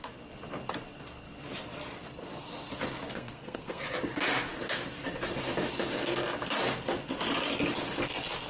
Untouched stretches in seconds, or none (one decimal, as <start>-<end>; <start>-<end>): 0.0-3.1; 3.8-8.5

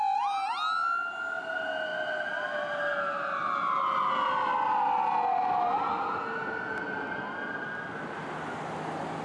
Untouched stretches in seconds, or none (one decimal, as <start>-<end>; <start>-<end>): 0.0-9.2

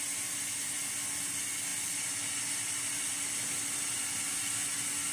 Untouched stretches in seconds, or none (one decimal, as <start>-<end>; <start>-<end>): 0.0-5.1

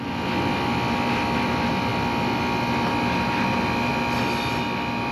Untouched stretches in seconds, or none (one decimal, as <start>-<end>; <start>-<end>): 0.0-5.1

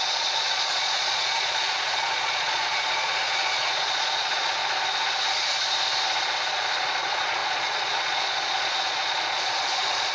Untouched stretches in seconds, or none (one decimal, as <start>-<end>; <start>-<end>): 4.6-7.0

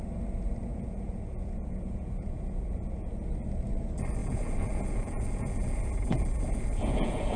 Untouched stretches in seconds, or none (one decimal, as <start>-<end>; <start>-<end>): 0.0-0.7; 3.1-4.2

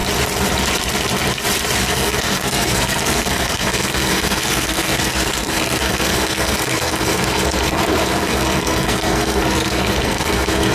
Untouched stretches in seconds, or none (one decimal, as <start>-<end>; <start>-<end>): 0.0-1.8

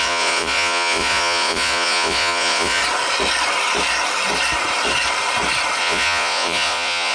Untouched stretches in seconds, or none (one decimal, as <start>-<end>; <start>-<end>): 2.8-5.8